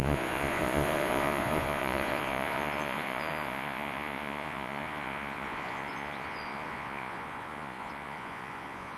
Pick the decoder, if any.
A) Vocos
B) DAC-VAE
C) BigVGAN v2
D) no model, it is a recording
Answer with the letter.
A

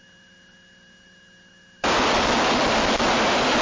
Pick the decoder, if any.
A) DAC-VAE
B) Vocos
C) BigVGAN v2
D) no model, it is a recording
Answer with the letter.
D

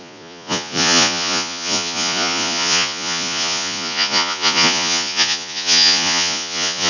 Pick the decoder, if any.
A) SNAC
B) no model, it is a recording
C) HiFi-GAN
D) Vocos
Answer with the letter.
D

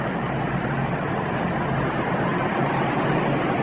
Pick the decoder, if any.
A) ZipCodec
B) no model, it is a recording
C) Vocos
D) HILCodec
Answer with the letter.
B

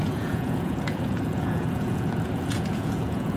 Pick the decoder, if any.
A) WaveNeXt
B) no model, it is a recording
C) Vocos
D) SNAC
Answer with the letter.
C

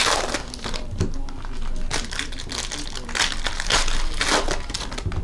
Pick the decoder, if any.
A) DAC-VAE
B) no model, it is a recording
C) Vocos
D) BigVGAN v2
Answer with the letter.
B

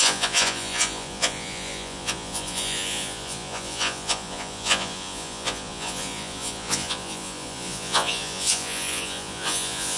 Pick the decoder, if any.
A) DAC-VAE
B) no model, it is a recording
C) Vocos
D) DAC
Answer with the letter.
C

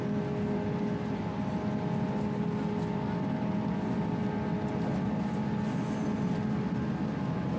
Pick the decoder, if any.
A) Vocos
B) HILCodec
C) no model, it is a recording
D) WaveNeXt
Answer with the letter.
C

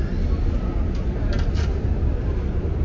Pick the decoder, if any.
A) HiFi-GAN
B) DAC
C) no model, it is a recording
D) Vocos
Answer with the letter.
C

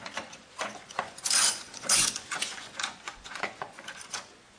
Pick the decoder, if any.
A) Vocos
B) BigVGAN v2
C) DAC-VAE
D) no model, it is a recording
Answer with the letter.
A